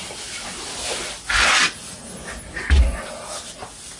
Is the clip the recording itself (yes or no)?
yes